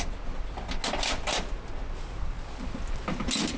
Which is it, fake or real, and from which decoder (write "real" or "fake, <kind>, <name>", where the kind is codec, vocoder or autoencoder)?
real